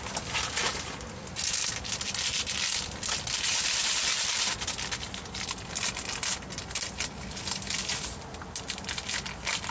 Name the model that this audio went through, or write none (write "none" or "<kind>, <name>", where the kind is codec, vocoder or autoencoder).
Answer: none